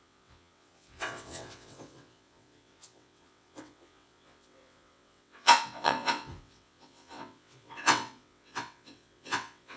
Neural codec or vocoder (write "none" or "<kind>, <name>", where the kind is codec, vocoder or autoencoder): vocoder, WaveNeXt